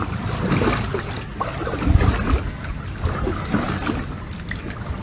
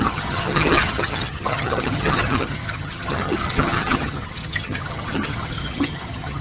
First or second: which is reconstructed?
second